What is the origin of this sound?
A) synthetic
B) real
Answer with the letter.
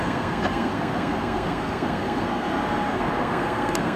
A